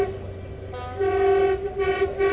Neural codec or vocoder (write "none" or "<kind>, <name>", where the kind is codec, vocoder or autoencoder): none